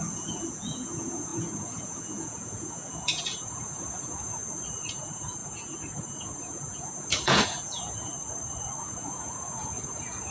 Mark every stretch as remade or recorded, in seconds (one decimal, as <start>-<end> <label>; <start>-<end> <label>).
0.0-4.4 remade; 4.4-4.9 recorded; 4.9-8.1 remade; 8.1-8.8 recorded; 8.8-10.3 remade